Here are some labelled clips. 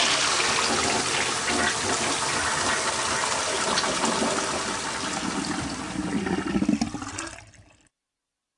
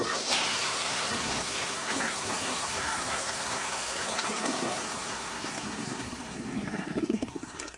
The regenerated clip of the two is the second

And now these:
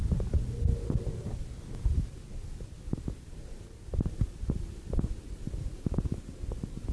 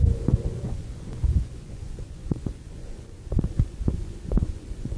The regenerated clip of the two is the second